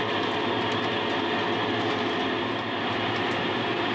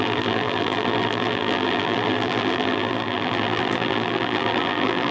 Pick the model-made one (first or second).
second